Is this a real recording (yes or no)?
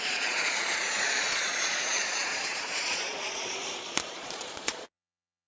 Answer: no